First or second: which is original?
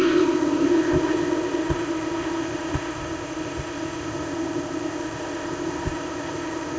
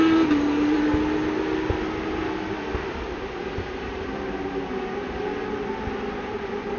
second